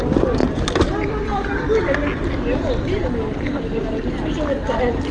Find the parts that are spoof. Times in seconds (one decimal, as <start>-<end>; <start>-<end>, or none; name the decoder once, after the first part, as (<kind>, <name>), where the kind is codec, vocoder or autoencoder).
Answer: none